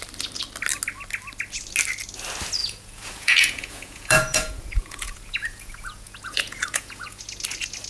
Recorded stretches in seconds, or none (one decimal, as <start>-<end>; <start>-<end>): 0.0-2.6; 7.2-7.9